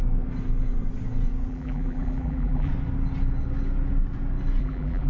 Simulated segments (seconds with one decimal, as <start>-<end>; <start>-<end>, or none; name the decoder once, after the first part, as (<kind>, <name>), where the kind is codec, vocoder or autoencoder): 1.5-2.7 (vocoder, BigVGAN v2); 4.6-5.1